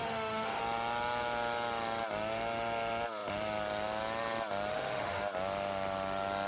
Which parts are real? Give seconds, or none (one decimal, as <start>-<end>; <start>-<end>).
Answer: 0.6-4.7; 5.2-6.5